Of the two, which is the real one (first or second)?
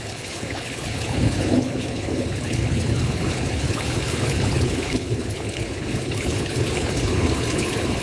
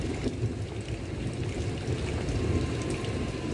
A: second